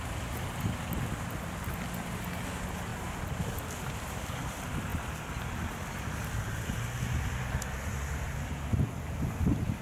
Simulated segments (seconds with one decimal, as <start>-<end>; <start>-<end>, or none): none